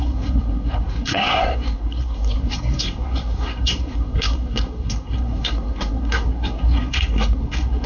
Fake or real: fake